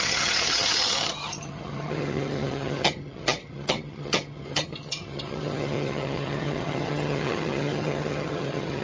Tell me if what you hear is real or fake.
fake